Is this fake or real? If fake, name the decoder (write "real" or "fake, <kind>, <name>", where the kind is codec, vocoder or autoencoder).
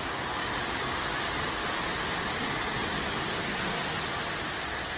real